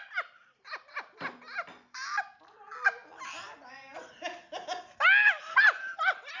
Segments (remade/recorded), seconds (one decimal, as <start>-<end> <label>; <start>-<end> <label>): 0.0-6.4 recorded

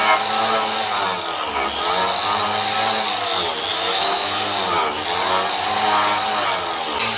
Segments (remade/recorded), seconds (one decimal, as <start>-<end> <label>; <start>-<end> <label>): 0.0-3.7 recorded; 3.7-4.4 remade; 4.4-7.2 recorded

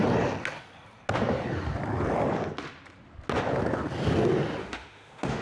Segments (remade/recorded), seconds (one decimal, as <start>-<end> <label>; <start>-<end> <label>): 0.0-4.6 recorded; 4.6-5.4 remade